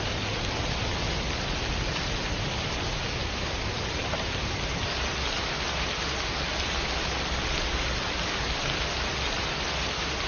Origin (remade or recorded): recorded